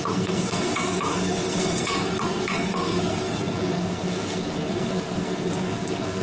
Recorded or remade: remade